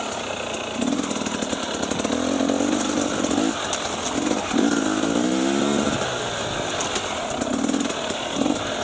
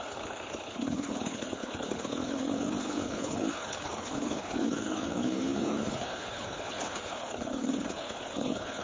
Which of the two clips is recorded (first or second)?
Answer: first